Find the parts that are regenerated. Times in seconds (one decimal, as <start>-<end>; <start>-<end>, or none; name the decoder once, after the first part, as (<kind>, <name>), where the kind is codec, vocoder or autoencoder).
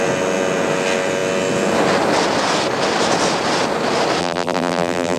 4.2-5.2 (vocoder, BigVGAN v2)